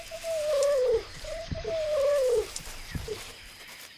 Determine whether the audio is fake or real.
fake